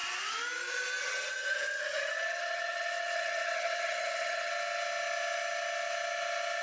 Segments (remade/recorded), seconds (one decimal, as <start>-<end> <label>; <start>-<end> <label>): 0.0-1.0 recorded; 1.0-4.5 remade; 4.5-6.6 recorded